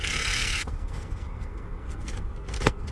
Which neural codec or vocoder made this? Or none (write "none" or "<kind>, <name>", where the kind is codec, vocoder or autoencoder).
codec, SNAC